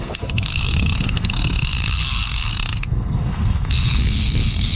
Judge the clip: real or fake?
fake